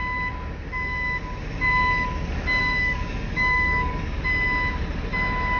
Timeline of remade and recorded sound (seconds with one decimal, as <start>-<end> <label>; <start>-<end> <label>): 0.0-2.6 recorded; 2.6-4.2 remade; 4.2-5.6 recorded